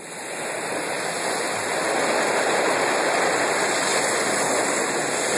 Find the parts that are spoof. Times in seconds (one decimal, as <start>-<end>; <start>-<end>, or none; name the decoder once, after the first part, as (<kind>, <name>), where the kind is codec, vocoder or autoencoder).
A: none